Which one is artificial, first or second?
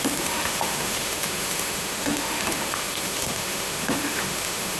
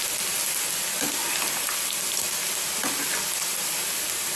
first